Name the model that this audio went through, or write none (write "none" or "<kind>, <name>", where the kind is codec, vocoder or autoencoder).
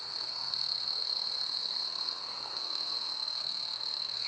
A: codec, SNAC